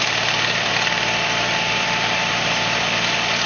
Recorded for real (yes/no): no